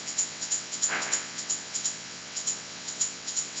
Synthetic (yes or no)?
yes